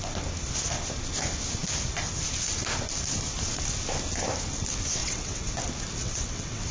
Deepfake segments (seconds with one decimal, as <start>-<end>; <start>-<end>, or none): 5.0-5.5; 6.0-6.7